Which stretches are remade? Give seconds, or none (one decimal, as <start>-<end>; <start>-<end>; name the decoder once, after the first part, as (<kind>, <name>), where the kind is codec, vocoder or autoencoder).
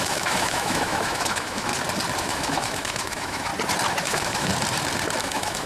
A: 0.0-1.7 (autoencoder, DAC-VAE); 2.2-3.5; 4.0-4.5; 5.2-5.7